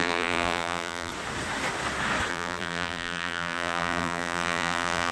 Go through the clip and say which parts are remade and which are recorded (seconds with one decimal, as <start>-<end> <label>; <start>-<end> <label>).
0.0-1.1 remade; 1.1-2.3 recorded; 2.3-5.1 remade